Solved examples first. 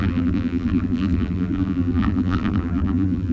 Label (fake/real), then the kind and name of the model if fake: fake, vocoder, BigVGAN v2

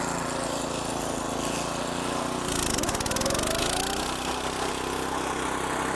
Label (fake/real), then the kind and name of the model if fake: real